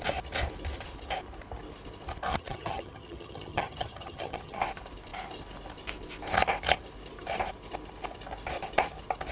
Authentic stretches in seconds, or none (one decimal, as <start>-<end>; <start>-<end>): 0.0-2.3; 4.6-9.3